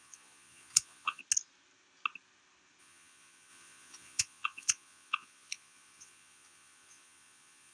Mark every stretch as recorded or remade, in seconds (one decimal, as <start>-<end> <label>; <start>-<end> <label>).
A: 0.0-1.2 remade; 1.2-2.8 recorded; 2.8-7.7 remade